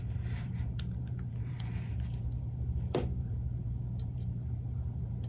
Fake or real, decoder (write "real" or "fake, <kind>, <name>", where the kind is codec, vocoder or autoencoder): fake, vocoder, BigVGAN v2